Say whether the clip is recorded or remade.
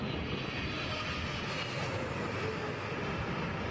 recorded